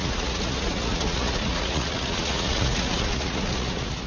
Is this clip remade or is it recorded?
remade